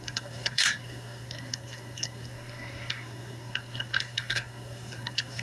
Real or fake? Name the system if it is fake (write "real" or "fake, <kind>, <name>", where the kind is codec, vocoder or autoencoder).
fake, codec, SNAC